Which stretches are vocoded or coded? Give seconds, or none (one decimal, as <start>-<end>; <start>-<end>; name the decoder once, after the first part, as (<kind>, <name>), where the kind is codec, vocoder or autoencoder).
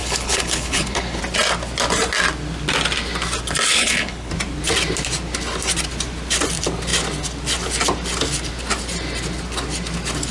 0.0-1.2 (codec, HILCodec); 3.7-4.3